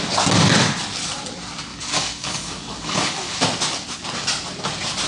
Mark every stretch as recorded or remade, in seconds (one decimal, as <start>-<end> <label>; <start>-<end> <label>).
0.0-1.7 recorded; 1.7-3.3 remade; 3.3-5.1 recorded